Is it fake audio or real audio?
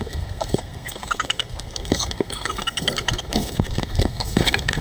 fake